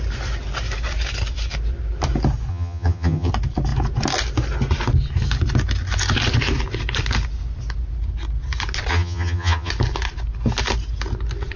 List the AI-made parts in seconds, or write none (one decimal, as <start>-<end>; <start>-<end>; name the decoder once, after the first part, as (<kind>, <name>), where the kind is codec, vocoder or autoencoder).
2.5-3.3 (vocoder, HiFi-GAN); 8.9-9.7

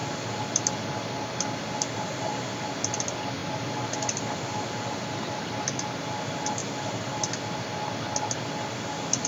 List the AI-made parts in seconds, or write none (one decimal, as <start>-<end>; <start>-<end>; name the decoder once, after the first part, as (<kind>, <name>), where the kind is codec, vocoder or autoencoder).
0.0-2.0 (vocoder, BigVGAN v2); 3.4-4.5; 6.6-7.2

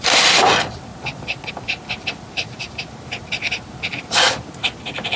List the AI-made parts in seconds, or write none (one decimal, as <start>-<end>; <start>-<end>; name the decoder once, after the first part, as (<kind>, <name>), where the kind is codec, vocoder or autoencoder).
0.9-1.5 (vocoder, Vocos)

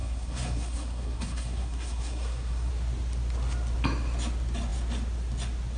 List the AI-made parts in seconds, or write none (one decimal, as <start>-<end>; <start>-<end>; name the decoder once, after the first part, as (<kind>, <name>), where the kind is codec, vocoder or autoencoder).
0.0-2.7 (codec, SNAC)